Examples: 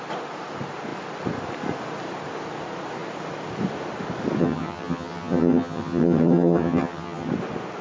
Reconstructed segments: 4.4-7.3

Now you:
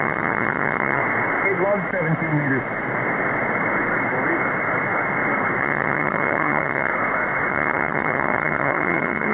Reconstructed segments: 0.0-1.0; 5.6-6.9; 7.5-9.3

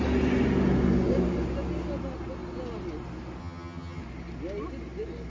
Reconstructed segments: 3.4-4.0

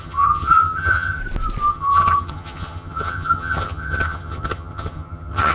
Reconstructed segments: 0.0-1.2; 1.7-5.5